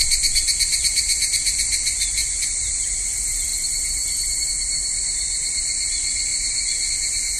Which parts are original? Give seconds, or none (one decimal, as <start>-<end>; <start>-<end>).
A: 0.0-7.4